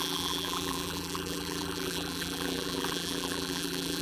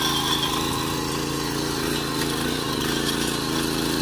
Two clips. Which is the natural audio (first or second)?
second